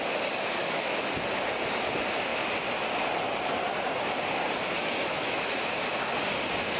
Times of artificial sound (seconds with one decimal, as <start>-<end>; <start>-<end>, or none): 0.6-1.1; 4.8-5.4